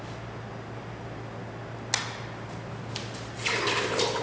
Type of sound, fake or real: real